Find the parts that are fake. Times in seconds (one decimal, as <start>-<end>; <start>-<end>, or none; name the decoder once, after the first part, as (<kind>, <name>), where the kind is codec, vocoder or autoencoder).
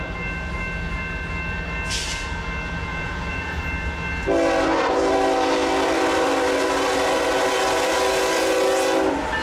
2.9-3.6 (vocoder, Vocos)